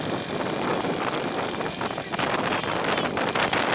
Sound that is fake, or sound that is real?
real